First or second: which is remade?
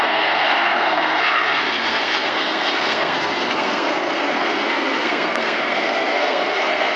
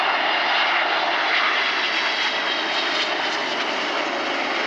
first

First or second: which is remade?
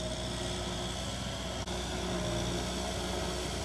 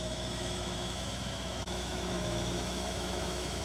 second